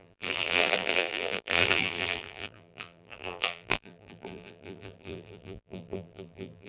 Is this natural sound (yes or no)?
no